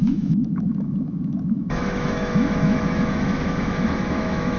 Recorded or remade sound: remade